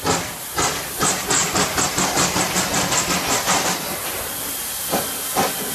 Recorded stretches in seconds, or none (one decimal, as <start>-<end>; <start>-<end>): 0.0-5.7

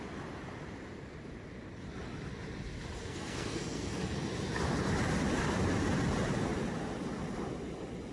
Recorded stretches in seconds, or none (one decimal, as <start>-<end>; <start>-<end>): 0.0-3.0; 4.2-8.1